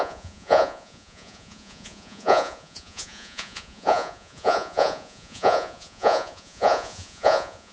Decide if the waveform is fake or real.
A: fake